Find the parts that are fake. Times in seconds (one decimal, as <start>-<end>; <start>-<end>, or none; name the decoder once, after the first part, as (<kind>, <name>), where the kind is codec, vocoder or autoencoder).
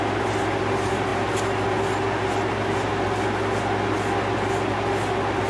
none